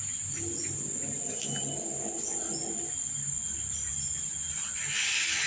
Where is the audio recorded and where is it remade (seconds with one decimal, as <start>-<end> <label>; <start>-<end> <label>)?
0.0-2.6 recorded; 2.6-3.3 remade; 3.3-5.5 recorded